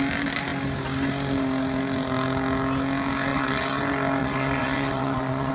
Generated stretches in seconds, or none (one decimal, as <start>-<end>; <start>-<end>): 3.3-3.8; 4.2-5.5